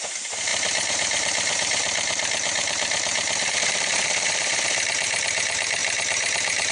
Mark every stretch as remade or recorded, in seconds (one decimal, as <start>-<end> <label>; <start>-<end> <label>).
0.0-6.7 remade